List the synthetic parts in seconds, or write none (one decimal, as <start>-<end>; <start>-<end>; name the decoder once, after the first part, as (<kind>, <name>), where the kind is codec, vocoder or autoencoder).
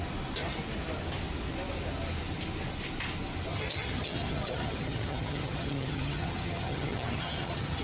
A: 3.5-7.8 (vocoder, HiFi-GAN)